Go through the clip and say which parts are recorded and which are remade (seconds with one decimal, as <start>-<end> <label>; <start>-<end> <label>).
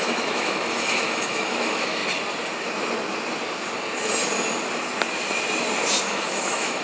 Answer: 0.0-2.0 remade; 2.0-6.0 recorded; 6.0-6.8 remade